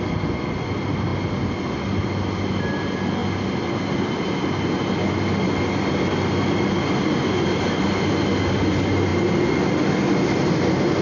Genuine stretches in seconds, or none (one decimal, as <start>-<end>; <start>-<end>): 0.0-11.0